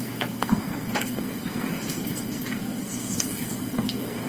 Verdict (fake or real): fake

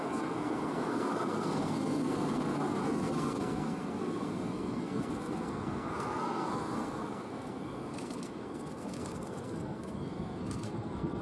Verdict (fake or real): fake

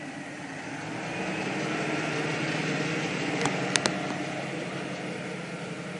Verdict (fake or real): real